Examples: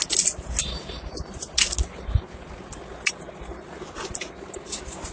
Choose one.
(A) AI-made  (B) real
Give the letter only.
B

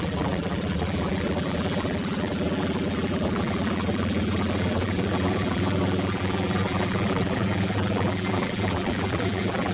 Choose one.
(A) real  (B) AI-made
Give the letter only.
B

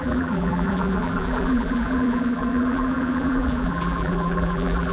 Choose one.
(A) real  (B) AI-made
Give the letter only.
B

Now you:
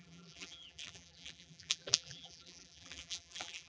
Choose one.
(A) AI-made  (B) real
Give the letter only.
A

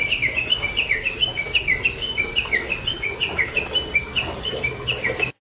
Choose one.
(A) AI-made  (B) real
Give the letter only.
B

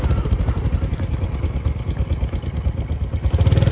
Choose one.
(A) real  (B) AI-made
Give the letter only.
A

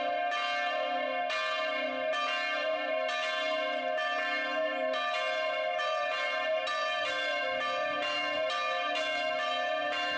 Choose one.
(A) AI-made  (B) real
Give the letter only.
B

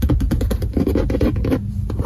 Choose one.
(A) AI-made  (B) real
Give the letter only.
B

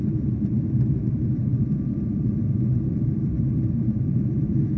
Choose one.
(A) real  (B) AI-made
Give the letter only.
B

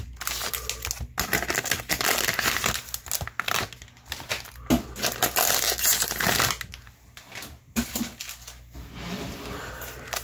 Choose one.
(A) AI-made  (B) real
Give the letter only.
B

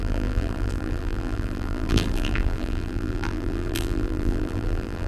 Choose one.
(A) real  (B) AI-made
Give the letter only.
B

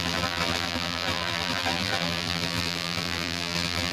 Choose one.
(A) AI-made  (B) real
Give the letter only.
A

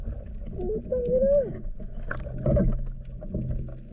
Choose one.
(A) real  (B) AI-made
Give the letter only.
A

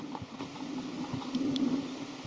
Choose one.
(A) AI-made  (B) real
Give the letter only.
B